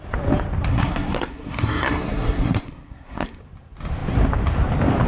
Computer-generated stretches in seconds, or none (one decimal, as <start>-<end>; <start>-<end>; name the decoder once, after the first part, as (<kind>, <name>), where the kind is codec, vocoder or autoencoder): 0.7-3.4 (codec, SNAC)